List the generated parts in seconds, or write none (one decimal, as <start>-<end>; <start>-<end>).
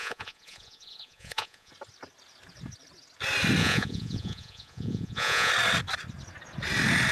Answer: 0.0-1.7; 3.6-5.5